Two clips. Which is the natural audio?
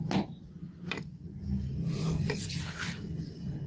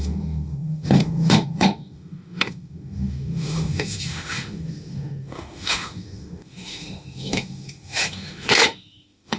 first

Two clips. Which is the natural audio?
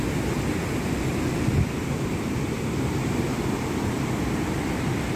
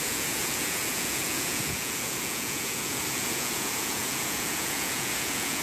first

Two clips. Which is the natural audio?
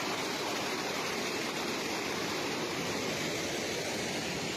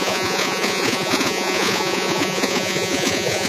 first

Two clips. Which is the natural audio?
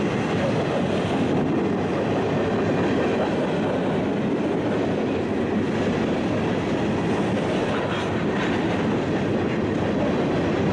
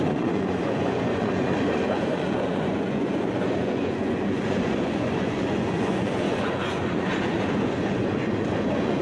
first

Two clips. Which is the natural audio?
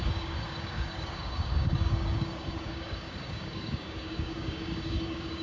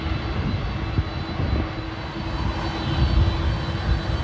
second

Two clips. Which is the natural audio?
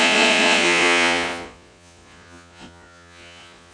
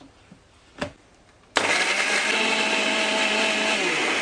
second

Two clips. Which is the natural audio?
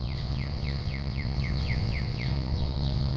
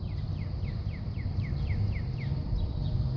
second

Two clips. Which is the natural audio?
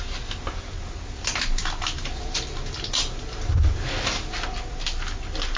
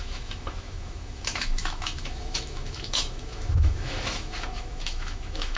first